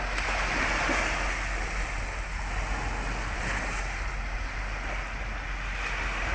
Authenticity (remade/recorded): recorded